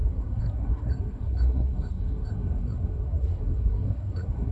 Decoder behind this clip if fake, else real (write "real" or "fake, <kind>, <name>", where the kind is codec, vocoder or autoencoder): fake, codec, SNAC